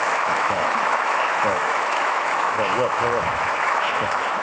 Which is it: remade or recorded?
remade